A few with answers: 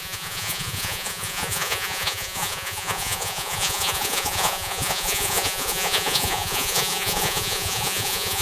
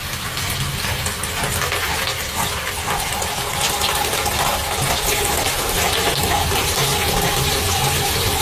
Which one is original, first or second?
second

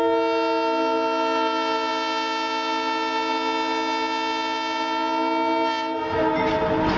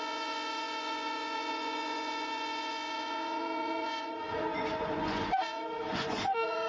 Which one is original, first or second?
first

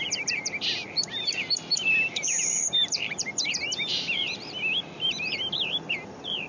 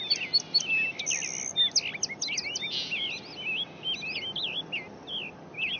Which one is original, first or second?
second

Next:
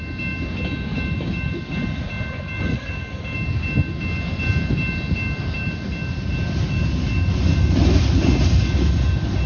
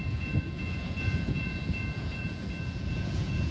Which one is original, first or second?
first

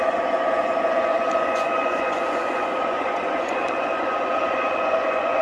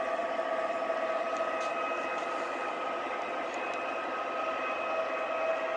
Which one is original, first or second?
second